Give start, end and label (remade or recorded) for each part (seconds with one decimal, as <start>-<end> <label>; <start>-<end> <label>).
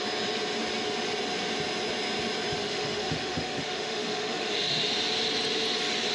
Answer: 0.0-2.6 recorded; 2.6-4.9 remade; 4.9-6.1 recorded